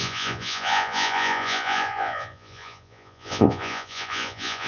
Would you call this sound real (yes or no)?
no